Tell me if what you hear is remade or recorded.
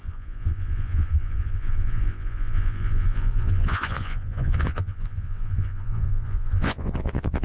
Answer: remade